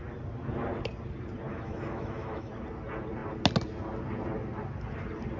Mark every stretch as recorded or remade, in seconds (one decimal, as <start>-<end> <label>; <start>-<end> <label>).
0.0-1.5 recorded; 1.5-2.5 remade; 2.5-5.4 recorded